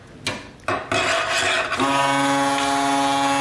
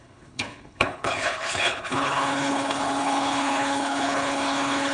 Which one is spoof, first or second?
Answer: second